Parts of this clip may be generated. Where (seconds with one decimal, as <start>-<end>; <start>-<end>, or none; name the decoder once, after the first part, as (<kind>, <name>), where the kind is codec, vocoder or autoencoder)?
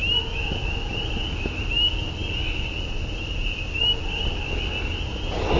none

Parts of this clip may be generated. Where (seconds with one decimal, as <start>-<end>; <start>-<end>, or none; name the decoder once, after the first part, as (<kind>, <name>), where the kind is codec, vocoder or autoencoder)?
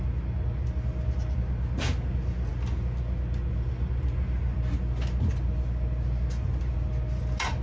none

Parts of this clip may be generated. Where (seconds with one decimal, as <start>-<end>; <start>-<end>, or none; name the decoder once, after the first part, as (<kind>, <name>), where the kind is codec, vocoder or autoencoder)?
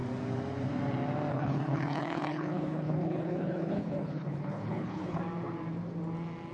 1.3-5.2 (codec, HILCodec)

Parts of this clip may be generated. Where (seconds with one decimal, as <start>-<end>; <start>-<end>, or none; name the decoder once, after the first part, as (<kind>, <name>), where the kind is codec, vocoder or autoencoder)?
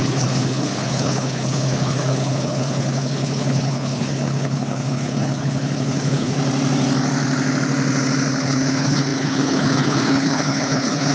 0.0-6.4 (codec, HILCodec); 8.4-11.1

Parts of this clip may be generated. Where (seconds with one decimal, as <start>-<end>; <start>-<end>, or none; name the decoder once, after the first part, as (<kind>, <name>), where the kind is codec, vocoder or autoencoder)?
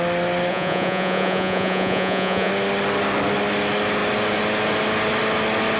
0.5-2.5 (vocoder, Vocos)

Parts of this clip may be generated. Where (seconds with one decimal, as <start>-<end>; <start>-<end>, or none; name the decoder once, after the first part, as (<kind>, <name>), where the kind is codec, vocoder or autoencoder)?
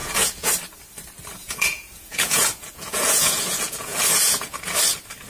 0.0-0.5 (vocoder, Vocos); 1.4-4.6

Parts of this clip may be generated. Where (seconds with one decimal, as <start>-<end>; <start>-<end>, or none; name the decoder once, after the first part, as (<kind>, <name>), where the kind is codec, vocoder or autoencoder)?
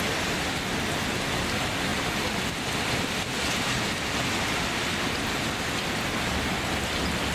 1.9-5.6 (vocoder, BigVGAN v2)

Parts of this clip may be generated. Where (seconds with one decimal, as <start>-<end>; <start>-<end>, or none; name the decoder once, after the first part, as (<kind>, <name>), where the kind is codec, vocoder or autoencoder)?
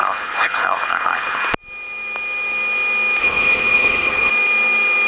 0.0-1.4 (codec, HILCodec); 3.2-4.3